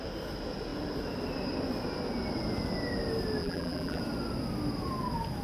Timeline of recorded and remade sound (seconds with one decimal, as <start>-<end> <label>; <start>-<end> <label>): 0.0-3.4 recorded; 3.4-4.0 remade; 4.0-5.4 recorded